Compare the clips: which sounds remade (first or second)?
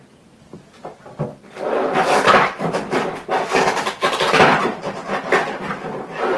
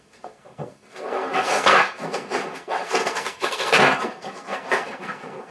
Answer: second